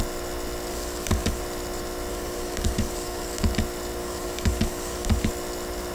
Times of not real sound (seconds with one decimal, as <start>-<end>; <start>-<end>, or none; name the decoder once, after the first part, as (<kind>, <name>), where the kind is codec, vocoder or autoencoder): 0.7-1.4 (codec, DAC); 2.1-3.4; 4.0-5.3